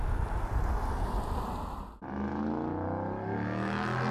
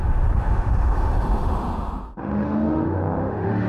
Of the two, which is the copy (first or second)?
second